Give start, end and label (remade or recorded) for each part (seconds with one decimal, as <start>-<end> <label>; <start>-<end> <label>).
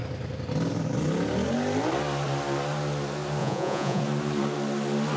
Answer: 0.0-3.4 recorded; 3.4-4.0 remade; 4.0-5.2 recorded